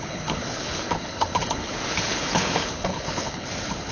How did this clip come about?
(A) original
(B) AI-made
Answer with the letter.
B